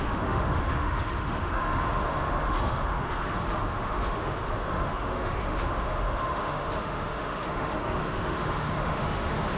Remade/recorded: remade